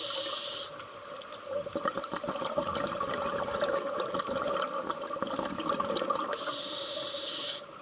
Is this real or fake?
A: real